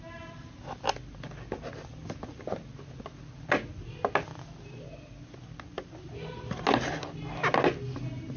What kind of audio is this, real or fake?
real